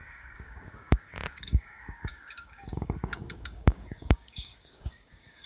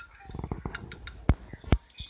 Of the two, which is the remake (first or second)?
first